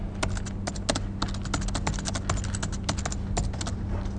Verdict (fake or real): real